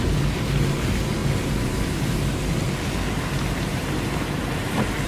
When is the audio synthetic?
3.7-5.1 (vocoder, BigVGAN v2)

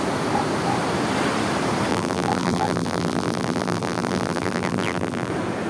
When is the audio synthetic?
1.9-5.3 (vocoder, BigVGAN v2)

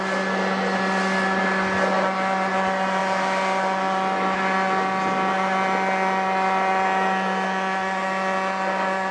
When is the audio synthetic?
none

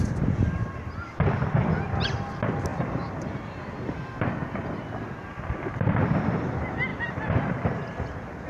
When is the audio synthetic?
2.7-4.0 (vocoder, BigVGAN v2); 6.9-7.7

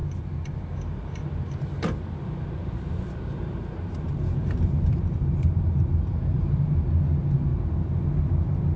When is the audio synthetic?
2.6-6.8 (vocoder, BigVGAN v2)

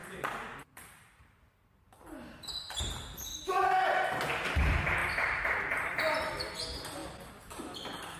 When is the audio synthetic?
5.0-6.0 (vocoder, BigVGAN v2)